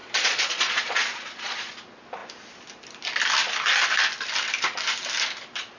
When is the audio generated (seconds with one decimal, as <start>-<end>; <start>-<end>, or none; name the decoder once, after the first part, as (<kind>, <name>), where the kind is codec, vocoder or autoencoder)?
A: 0.0-1.7 (vocoder, Vocos)